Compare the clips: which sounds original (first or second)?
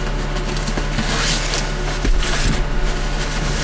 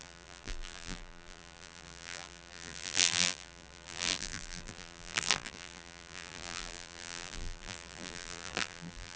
first